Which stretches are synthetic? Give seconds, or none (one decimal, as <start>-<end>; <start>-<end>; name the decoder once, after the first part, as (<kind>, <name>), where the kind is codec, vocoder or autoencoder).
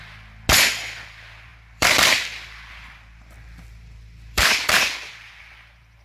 1.5-5.1 (vocoder, BigVGAN v2)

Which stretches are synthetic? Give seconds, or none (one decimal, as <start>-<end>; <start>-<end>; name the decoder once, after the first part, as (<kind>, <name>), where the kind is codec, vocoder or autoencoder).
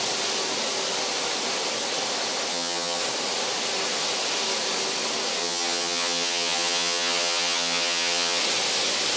2.5-3.0 (vocoder, HiFi-GAN); 5.4-8.4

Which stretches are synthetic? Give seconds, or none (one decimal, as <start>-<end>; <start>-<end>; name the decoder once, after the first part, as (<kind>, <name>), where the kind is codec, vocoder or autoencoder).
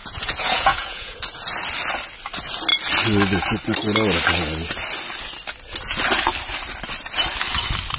0.0-1.4 (vocoder, Vocos)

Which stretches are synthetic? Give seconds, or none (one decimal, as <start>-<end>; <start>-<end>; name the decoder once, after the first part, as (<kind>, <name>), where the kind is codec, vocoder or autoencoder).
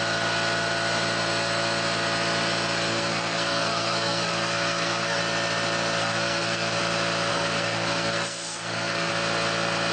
2.9-5.2 (codec, SNAC); 6.0-6.8; 7.3-9.1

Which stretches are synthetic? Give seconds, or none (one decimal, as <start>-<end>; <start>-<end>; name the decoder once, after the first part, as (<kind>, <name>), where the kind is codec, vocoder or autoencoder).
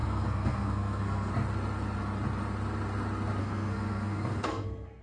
0.0-1.3 (codec, SNAC); 3.4-5.0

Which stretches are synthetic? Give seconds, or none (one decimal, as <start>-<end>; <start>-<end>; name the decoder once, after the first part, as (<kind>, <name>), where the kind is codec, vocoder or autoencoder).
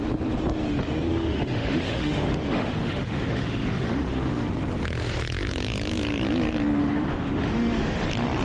1.1-4.5 (autoencoder, DAC-VAE); 6.8-8.0